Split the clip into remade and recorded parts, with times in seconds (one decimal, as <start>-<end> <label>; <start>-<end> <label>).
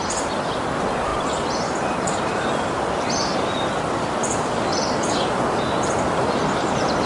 0.0-7.1 recorded